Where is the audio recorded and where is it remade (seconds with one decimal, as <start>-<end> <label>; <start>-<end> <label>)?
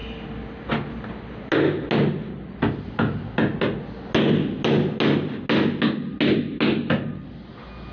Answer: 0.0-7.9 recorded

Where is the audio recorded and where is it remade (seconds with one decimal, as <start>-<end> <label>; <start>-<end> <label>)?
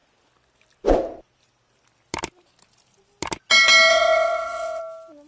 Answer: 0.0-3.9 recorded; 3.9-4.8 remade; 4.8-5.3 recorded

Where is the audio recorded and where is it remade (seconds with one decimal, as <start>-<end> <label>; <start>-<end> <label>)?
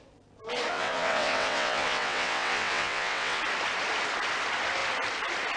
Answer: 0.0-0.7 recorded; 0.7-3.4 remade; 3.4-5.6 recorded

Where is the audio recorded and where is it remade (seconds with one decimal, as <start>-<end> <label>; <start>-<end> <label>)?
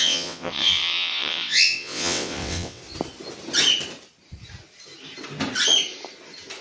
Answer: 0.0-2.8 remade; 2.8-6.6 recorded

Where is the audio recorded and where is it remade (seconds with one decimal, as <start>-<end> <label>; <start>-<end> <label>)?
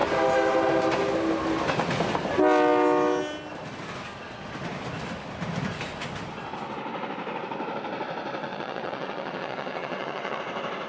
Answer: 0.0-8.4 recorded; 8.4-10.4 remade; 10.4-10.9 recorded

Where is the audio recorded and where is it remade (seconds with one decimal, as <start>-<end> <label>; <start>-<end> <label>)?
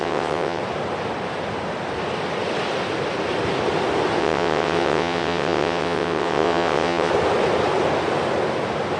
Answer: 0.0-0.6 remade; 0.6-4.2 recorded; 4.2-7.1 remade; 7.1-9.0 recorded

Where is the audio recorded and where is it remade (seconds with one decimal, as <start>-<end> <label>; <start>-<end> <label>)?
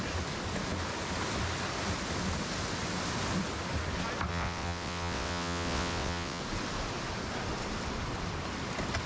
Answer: 0.0-4.3 recorded; 4.3-6.4 remade; 6.4-9.1 recorded